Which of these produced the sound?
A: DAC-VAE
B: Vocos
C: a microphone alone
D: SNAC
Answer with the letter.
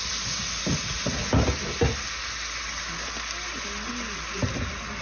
C